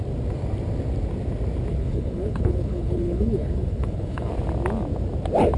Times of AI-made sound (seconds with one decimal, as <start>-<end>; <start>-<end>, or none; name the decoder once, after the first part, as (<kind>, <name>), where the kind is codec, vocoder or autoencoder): 1.7-4.3 (codec, HILCodec)